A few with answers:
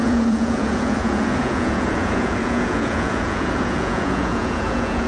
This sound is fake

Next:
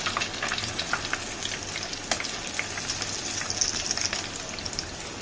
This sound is real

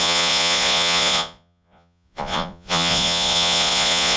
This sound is fake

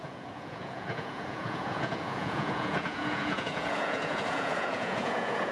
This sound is fake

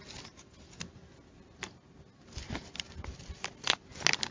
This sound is real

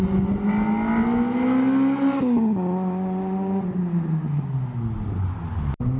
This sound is real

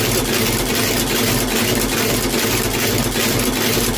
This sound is real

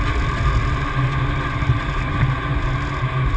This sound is real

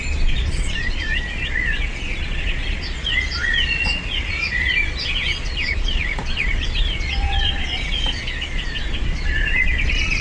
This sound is fake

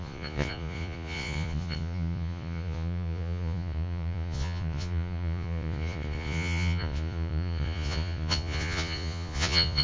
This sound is fake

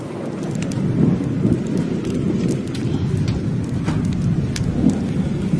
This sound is real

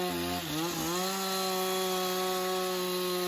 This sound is real